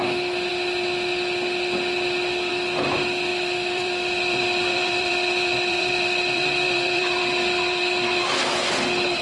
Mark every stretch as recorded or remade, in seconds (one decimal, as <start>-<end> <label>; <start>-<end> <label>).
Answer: 0.0-3.3 recorded; 3.3-8.2 remade; 8.2-9.2 recorded